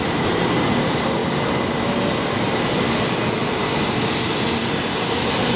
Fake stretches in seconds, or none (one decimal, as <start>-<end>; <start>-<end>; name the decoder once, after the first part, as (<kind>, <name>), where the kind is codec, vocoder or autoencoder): none